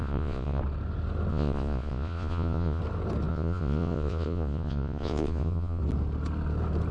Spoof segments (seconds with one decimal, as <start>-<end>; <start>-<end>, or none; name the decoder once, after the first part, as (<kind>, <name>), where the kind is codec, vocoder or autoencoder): 0.0-0.6 (vocoder, Vocos); 1.3-2.8; 3.3-5.8